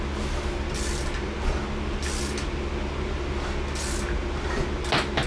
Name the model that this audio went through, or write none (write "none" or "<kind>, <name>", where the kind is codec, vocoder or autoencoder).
none